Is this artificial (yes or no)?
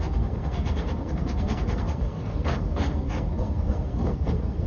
yes